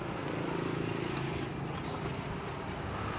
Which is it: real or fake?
real